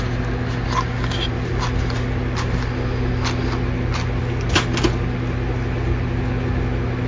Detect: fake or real real